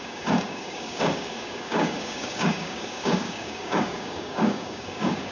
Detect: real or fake fake